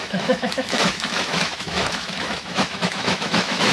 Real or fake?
fake